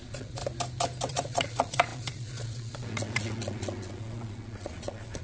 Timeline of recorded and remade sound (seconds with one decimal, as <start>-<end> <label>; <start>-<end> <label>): 0.0-0.4 remade; 0.4-1.1 recorded; 1.1-5.2 remade